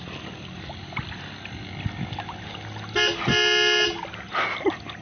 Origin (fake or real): real